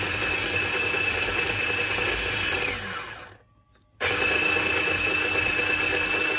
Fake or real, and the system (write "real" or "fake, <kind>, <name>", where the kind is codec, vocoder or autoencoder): real